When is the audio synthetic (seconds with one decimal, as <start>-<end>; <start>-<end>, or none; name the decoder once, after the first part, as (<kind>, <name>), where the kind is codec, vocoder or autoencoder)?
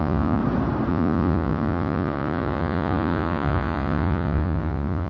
0.0-0.4 (vocoder, Vocos); 0.9-5.1